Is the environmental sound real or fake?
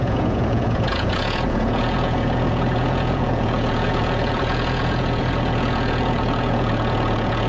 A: fake